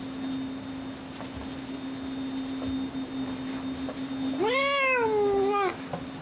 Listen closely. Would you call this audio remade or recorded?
recorded